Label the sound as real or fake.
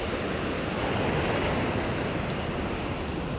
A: real